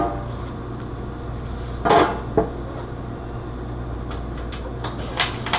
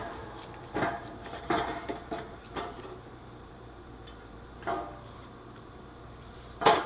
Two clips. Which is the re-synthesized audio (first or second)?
second